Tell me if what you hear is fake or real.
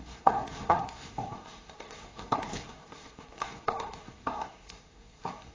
fake